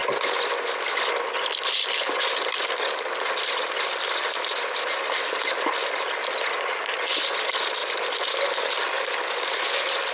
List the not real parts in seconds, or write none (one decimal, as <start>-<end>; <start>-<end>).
none